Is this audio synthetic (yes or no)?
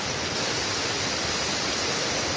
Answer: no